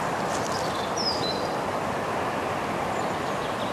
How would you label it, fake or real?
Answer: real